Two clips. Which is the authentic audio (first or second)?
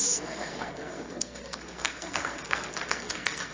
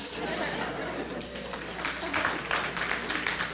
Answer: second